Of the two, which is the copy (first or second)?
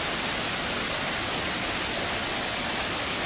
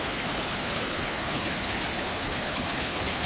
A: second